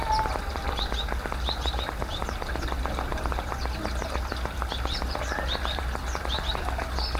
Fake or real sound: real